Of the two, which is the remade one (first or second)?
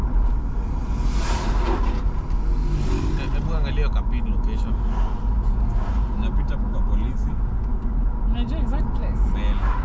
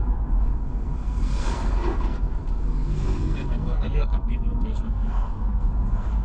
second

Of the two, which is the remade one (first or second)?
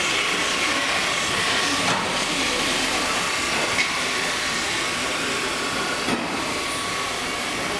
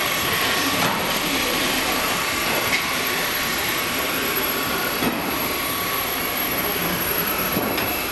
second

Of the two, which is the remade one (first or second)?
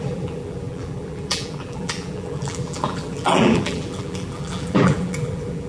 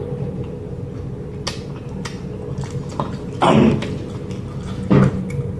first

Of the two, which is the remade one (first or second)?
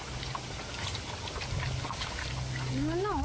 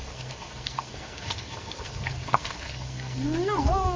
second